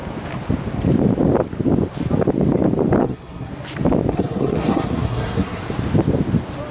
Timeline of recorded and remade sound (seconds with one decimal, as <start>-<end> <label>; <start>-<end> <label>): 0.0-3.0 recorded; 3.0-3.5 remade; 3.5-4.1 recorded; 4.1-5.6 remade; 5.6-6.7 recorded